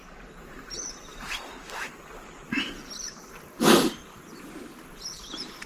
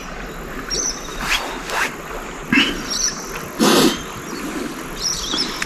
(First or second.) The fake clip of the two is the first